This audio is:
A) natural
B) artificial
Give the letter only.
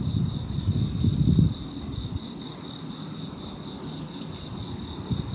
A